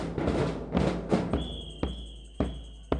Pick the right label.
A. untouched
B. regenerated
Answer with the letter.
A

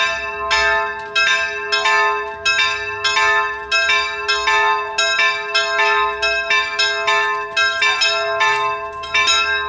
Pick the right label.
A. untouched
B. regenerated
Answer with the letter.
A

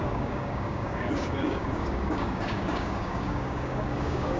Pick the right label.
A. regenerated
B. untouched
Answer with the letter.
A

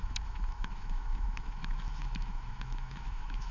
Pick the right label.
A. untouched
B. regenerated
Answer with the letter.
B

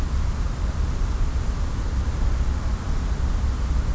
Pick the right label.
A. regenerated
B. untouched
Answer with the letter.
B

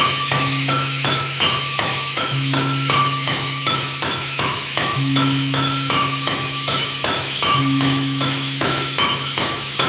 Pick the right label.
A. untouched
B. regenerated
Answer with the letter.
B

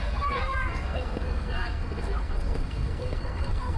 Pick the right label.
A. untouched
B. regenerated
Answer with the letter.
B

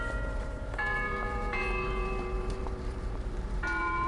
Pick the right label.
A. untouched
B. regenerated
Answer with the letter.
B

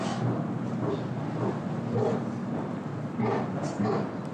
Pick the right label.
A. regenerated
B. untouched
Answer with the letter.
B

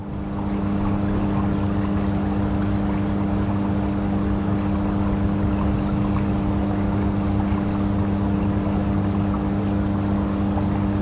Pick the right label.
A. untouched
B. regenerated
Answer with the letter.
A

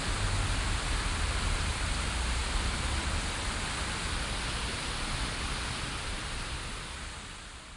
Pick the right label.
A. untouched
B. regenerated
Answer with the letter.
A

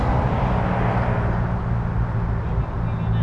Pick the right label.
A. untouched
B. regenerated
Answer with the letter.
A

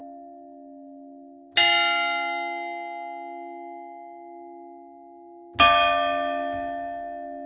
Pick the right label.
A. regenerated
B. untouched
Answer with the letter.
B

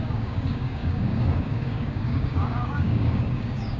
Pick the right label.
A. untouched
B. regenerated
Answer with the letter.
B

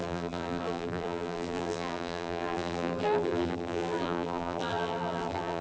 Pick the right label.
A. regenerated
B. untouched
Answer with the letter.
A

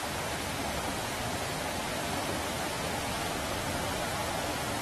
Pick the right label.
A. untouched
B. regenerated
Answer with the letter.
A